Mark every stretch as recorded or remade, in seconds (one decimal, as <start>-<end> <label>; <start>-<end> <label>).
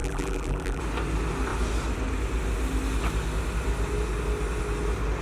0.0-0.8 remade; 0.8-5.2 recorded